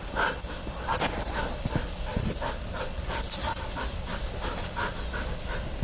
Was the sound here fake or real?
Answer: fake